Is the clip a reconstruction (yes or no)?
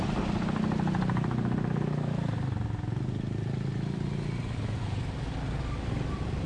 no